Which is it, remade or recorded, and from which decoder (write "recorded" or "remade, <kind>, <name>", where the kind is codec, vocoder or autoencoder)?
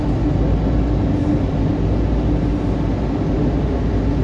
recorded